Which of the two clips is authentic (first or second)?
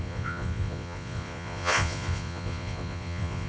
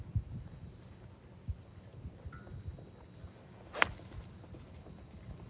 second